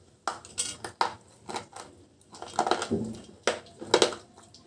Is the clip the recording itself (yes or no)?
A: yes